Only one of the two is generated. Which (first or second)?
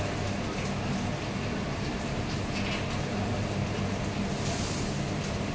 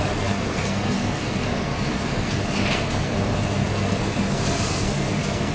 second